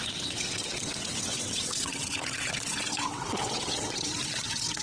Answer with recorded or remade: remade